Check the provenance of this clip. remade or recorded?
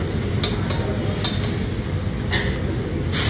recorded